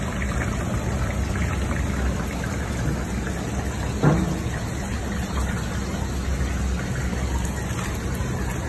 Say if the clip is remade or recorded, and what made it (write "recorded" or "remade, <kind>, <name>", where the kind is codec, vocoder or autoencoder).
recorded